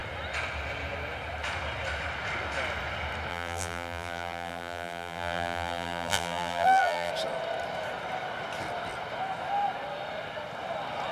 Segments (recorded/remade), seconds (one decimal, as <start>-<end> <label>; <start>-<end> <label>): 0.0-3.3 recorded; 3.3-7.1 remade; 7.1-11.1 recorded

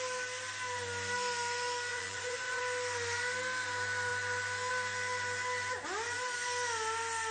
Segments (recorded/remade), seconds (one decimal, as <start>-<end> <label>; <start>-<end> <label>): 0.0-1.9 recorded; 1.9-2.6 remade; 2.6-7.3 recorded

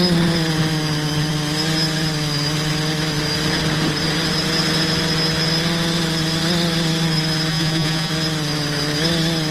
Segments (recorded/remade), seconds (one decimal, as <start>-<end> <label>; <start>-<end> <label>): 0.0-7.5 recorded; 7.5-8.1 remade; 8.1-9.5 recorded

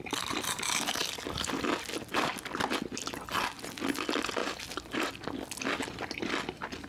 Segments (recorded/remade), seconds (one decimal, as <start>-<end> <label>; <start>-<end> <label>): 0.0-4.4 recorded; 4.4-5.1 remade; 5.1-6.9 recorded

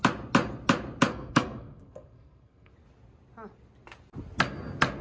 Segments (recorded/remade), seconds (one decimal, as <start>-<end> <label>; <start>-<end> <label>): 0.0-1.1 recorded; 1.1-2.7 remade; 2.7-5.0 recorded